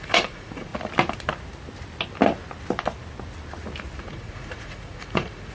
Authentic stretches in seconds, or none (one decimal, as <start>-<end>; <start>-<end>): 0.7-4.0